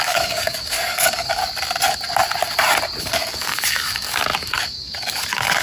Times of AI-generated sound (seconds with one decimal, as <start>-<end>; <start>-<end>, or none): 0.0-1.4; 3.0-5.6